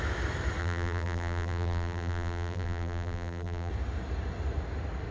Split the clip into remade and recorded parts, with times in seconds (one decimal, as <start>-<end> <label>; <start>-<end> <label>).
0.0-0.6 recorded; 0.6-3.7 remade; 3.7-5.1 recorded